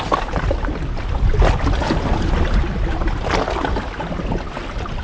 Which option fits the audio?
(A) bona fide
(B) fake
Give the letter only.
A